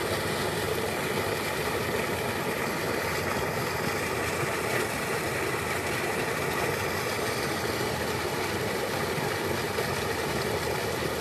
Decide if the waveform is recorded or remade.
recorded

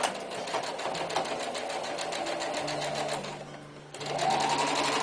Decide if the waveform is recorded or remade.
recorded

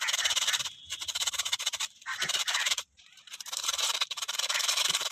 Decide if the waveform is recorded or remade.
remade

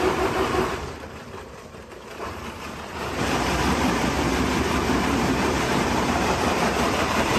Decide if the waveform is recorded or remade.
remade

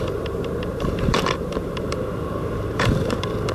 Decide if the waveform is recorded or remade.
remade